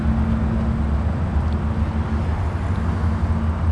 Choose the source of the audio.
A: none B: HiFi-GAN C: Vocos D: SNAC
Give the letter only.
A